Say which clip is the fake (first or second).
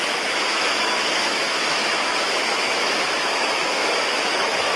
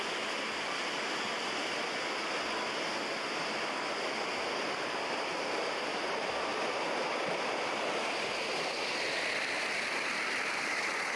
first